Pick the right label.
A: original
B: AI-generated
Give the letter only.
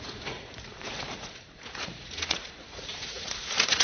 B